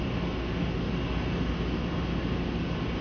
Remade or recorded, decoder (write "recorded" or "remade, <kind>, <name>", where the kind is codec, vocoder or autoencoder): recorded